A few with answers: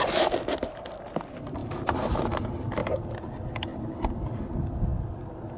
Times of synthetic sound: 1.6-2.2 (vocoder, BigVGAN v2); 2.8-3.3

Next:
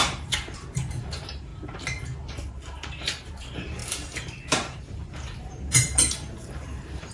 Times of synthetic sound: 0.0-1.5 (vocoder, BigVGAN v2); 2.5-7.1

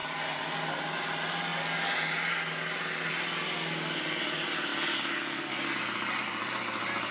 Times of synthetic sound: none

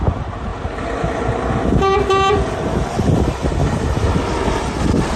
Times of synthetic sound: 3.6-4.1 (vocoder, BigVGAN v2)

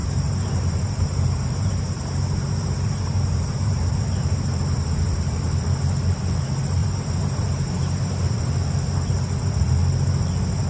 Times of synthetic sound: 0.0-3.9 (vocoder, BigVGAN v2); 6.8-8.2